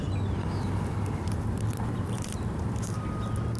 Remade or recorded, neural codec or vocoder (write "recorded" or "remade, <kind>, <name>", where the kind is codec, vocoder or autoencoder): recorded